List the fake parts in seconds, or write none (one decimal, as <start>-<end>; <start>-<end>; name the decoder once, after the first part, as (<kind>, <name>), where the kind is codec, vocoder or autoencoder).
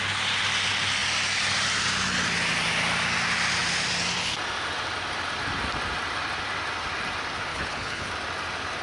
7.5-8.1 (codec, HILCodec)